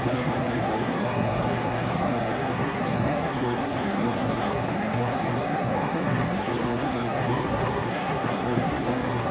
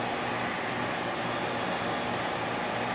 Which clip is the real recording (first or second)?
second